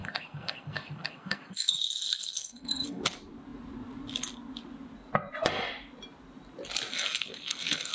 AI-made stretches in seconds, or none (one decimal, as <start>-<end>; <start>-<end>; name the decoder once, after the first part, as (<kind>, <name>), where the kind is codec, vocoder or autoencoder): 0.0-3.0 (codec, SNAC); 6.9-7.9